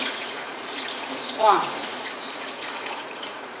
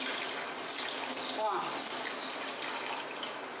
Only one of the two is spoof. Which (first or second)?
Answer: first